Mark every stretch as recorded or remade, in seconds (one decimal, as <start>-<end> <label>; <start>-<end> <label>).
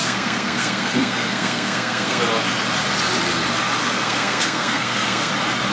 0.0-2.2 remade; 2.2-3.8 recorded; 3.8-5.3 remade; 5.3-5.7 recorded